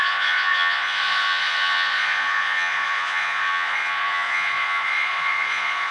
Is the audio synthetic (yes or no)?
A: yes